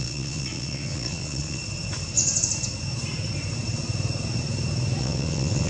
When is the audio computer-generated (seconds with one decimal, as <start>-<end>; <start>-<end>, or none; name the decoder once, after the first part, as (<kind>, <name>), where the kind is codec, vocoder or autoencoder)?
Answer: 0.0-1.6 (vocoder, Vocos); 5.0-5.7